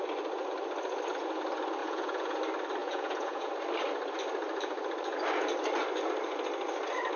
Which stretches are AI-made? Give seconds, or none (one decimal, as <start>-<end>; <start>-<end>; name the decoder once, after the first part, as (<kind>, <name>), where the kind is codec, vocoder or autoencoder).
1.8-2.4 (vocoder, Vocos); 2.8-3.5